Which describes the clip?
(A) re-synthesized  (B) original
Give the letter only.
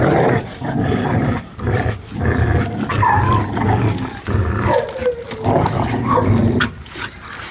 B